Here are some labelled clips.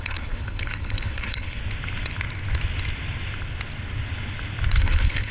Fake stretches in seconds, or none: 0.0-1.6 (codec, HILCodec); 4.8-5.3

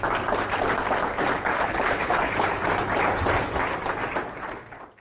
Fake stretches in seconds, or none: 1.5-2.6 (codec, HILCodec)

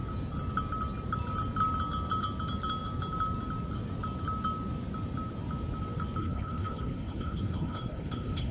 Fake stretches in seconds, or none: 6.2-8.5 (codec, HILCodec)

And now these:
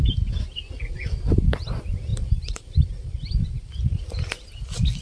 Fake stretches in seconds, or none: none